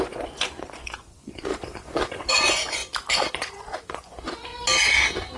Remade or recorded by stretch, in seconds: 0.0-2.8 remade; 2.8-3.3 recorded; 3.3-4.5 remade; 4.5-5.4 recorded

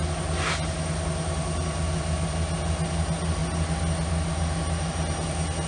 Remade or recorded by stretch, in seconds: 0.0-5.7 recorded

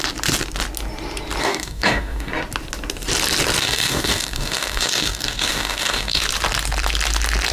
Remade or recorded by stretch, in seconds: 0.0-1.4 recorded; 1.4-2.3 remade; 2.3-3.6 recorded; 3.6-6.2 remade; 6.2-7.5 recorded

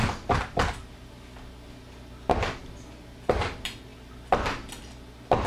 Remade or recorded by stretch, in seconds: 0.0-5.5 recorded

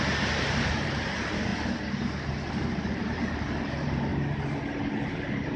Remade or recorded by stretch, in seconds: 0.0-1.5 remade; 1.5-2.5 recorded; 2.5-4.1 remade; 4.1-4.9 recorded; 4.9-5.6 remade

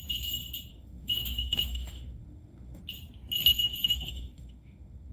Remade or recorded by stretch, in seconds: 0.0-0.7 recorded; 0.7-2.8 remade; 2.8-3.5 recorded; 3.5-5.1 remade

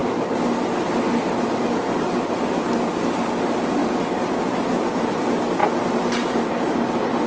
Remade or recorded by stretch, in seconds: 0.0-5.6 recorded; 5.6-6.4 remade; 6.4-7.3 recorded